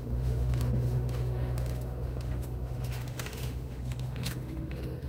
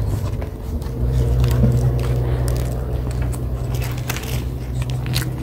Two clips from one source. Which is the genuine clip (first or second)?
second